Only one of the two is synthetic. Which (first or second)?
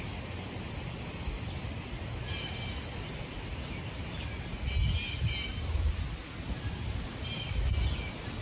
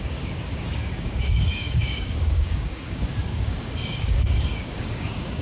second